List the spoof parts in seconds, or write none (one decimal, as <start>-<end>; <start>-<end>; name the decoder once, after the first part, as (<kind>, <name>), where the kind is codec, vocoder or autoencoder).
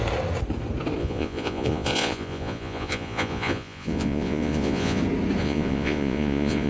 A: 1.0-5.0 (vocoder, Vocos); 5.4-6.7